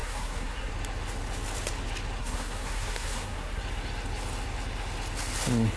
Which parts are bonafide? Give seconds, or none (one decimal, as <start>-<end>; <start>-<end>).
0.7-2.2; 3.6-5.8